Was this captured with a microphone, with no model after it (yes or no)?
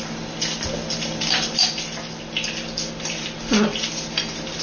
yes